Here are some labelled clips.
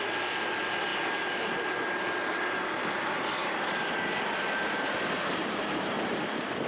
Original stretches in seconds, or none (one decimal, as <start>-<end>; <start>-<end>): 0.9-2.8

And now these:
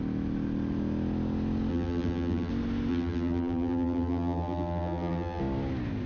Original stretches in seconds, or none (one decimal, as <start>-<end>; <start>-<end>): 0.0-1.7; 2.5-2.9; 5.4-6.1

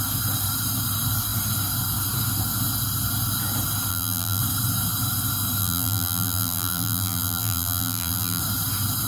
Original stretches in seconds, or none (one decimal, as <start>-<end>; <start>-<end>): 0.0-3.9; 4.4-5.6; 8.4-9.1

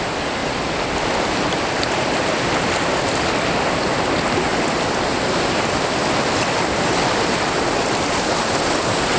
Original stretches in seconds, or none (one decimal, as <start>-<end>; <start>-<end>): 4.5-5.3; 6.0-8.6

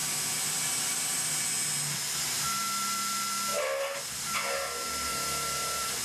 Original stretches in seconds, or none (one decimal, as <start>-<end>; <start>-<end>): 1.5-3.5; 4.3-5.1